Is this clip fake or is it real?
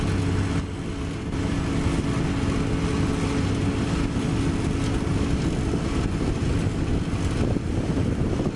real